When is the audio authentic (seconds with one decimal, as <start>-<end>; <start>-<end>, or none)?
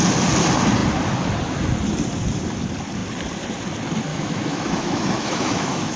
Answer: 0.0-4.1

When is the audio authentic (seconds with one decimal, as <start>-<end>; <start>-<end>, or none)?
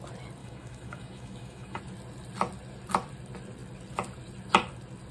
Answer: 0.0-0.4; 1.8-5.1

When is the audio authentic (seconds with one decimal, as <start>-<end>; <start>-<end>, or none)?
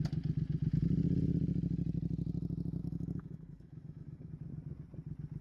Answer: 0.0-2.8; 4.3-5.4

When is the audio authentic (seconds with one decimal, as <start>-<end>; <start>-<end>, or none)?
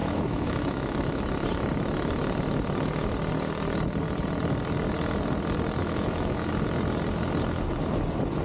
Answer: 1.2-5.8; 6.5-8.4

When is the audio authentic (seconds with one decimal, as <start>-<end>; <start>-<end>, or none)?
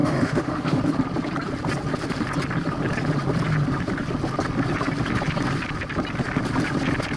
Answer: 0.8-7.2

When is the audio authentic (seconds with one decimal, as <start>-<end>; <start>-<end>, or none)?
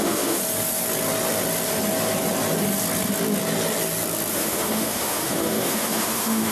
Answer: 0.4-4.3